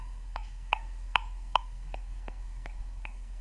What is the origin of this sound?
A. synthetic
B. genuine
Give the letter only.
A